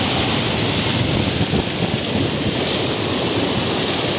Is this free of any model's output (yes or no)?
yes